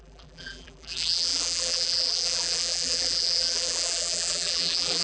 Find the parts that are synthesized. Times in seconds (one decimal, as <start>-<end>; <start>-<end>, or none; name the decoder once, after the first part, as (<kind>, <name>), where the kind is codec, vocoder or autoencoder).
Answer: 0.0-5.0 (vocoder, BigVGAN v2)